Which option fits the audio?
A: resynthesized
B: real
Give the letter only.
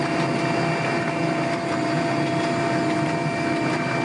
B